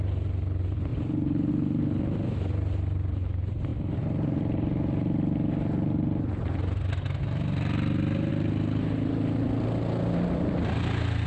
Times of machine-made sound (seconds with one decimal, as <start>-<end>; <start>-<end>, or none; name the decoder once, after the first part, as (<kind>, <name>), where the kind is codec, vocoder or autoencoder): none